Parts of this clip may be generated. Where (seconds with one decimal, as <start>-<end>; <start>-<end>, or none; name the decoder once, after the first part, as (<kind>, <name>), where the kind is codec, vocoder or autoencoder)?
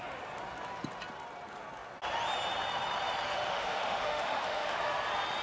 3.5-4.8 (autoencoder, DAC-VAE)